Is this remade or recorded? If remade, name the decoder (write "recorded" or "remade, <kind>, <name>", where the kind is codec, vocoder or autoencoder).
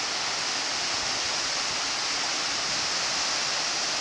recorded